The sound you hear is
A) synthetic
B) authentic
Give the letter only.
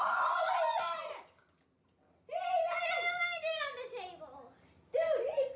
B